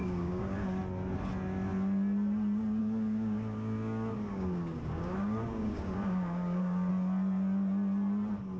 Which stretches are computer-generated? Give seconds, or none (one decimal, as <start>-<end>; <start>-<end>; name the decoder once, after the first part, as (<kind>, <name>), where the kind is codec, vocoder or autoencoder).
0.0-0.8 (codec, DAC); 2.8-6.9